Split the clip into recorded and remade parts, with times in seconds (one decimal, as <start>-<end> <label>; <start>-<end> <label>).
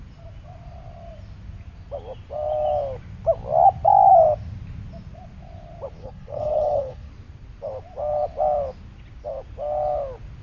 0.0-6.0 recorded; 6.0-7.1 remade; 7.1-10.4 recorded